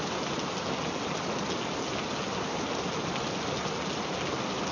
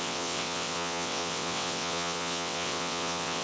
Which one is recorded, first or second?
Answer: first